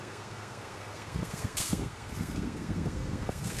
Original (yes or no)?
no